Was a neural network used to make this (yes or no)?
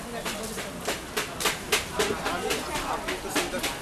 no